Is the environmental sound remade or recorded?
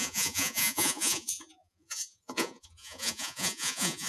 remade